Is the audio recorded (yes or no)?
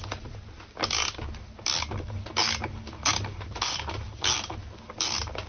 yes